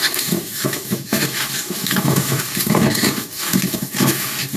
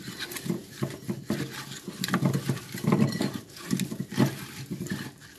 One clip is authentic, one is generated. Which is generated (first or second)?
first